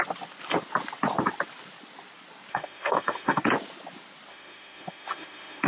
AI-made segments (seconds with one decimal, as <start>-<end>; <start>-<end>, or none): 2.5-3.4; 4.3-5.7